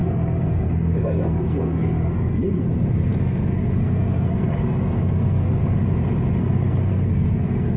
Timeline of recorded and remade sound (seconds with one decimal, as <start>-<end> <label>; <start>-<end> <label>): 0.0-5.6 remade; 5.6-6.4 recorded; 6.4-7.8 remade